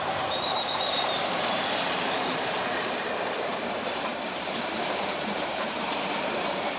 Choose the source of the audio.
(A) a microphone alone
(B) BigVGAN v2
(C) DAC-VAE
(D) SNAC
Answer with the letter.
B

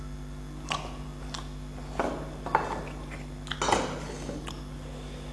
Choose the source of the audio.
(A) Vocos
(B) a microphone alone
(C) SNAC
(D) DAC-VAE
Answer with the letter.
B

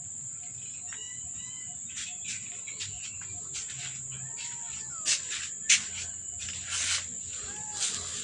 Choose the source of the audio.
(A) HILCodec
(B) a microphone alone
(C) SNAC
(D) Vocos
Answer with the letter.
B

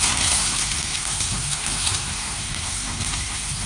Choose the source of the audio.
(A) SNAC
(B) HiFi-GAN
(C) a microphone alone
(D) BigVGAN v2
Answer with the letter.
A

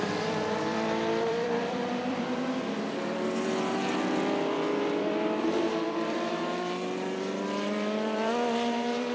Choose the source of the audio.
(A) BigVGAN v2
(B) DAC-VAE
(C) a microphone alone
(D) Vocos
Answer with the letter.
A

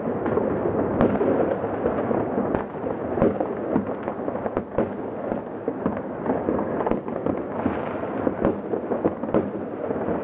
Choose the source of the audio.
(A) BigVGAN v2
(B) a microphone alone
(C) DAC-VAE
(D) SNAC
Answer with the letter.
B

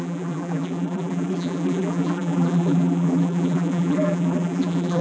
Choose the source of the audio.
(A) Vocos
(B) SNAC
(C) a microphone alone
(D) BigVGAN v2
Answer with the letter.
D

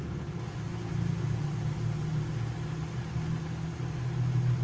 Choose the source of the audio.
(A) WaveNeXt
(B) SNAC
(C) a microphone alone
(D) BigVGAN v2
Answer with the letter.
C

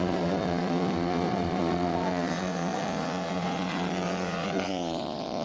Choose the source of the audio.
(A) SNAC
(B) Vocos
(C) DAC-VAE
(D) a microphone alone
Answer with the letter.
B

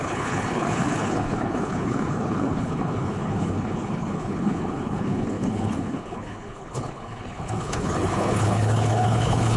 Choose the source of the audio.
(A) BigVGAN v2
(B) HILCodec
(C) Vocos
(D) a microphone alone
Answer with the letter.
B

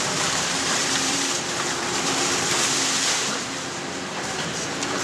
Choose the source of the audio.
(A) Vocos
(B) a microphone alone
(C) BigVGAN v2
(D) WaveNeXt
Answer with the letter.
C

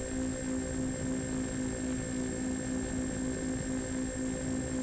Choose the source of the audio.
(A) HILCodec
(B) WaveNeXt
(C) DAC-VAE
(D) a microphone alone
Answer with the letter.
D